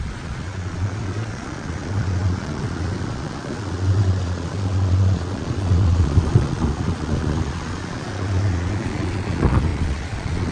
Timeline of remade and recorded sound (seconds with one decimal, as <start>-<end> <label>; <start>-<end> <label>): 0.0-10.5 remade